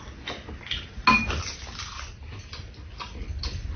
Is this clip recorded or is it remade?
recorded